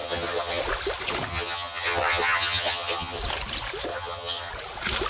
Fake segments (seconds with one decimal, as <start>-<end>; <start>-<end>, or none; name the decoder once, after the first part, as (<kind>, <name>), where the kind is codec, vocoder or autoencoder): 0.0-0.6 (vocoder, HiFi-GAN); 1.3-3.2; 3.9-4.5